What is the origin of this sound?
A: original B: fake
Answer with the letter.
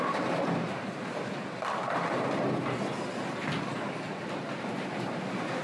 A